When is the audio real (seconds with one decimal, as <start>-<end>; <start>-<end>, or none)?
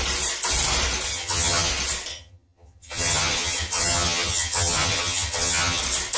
0.0-1.1; 1.7-2.1; 5.8-6.2